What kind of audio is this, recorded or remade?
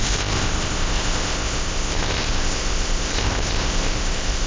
remade